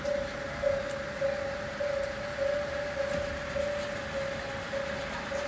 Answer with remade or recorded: recorded